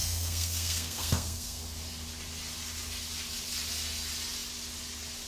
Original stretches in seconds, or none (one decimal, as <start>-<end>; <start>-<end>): 1.6-5.3